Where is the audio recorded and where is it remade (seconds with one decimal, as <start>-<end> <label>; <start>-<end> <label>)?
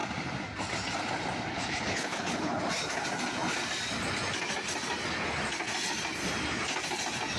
0.0-1.5 recorded; 1.5-2.6 remade; 2.6-7.4 recorded